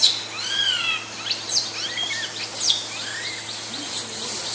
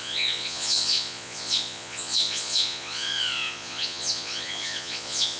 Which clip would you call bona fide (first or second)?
first